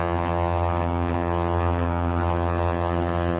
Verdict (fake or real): fake